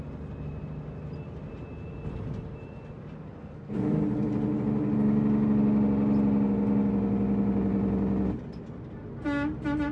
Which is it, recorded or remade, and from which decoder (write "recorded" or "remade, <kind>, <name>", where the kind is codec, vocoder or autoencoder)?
recorded